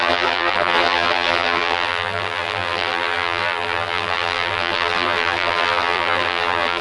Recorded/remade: remade